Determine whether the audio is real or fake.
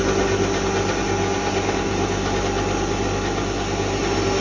real